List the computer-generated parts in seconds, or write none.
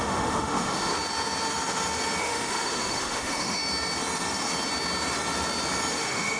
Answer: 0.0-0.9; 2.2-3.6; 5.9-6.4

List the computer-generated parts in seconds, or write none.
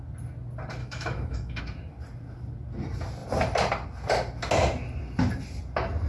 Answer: 0.8-1.6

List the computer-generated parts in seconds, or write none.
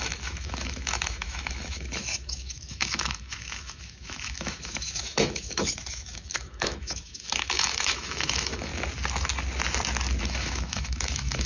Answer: 0.0-8.7; 10.2-11.5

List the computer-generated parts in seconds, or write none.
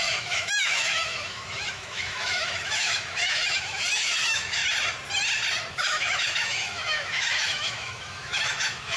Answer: 0.0-4.6; 5.7-9.0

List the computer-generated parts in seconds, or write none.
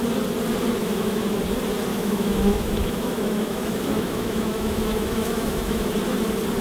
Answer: 0.8-1.4; 1.9-5.9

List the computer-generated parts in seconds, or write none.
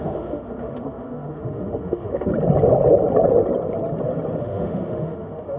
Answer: 0.0-2.3; 4.4-5.6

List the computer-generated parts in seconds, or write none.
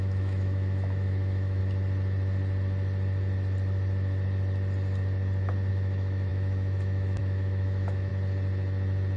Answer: 0.0-1.6; 5.7-8.1